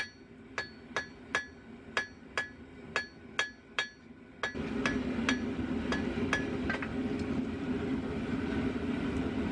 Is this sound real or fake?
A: real